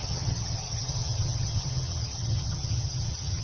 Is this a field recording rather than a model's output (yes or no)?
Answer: no